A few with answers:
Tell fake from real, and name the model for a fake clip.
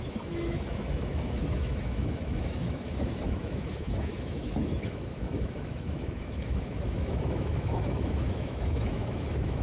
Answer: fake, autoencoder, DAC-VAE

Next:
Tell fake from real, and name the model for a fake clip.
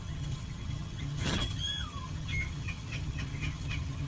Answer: fake, vocoder, HiFi-GAN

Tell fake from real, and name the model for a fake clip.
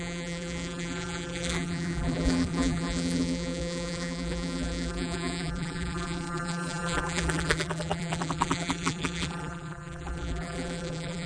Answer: fake, vocoder, BigVGAN v2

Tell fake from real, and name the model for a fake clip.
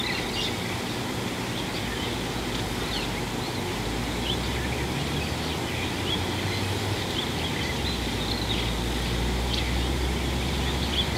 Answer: real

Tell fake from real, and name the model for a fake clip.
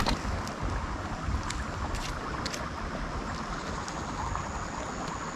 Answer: real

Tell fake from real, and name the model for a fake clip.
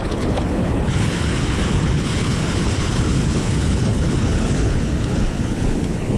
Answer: fake, codec, HILCodec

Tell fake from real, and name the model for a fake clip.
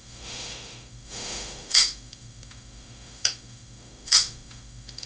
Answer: fake, autoencoder, DAC-VAE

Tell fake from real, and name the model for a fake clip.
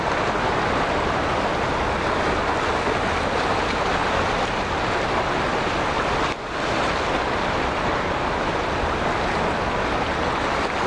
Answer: real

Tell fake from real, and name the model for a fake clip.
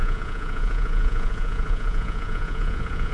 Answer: fake, vocoder, Vocos